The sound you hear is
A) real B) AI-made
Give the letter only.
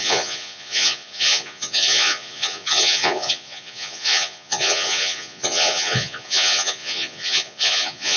B